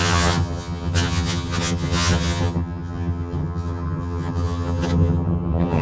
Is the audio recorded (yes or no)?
no